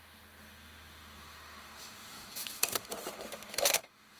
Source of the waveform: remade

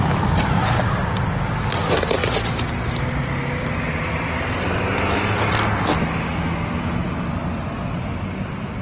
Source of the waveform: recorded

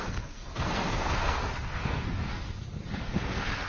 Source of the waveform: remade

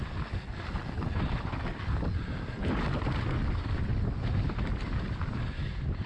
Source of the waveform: recorded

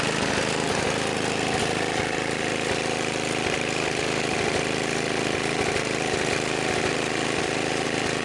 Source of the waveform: recorded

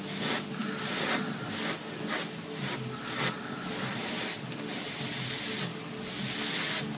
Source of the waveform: recorded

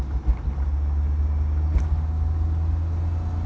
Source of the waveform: recorded